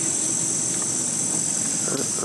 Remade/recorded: recorded